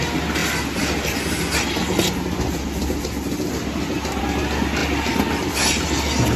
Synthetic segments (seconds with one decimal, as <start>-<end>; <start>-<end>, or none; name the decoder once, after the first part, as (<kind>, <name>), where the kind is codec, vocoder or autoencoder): none